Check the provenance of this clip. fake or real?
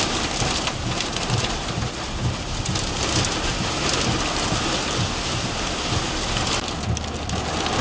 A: real